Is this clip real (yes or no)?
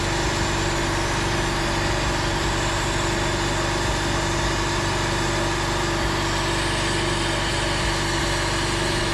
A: yes